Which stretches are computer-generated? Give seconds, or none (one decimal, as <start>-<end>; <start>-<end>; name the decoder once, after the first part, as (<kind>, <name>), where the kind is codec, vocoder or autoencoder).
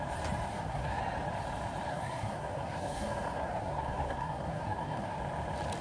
0.5-1.0 (codec, SNAC); 1.9-5.2